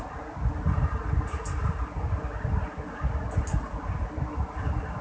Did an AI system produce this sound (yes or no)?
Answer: no